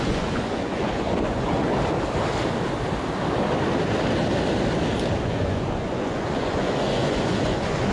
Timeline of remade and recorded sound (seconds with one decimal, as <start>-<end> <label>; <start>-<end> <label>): 0.0-1.7 remade; 1.7-5.2 recorded; 5.2-7.9 remade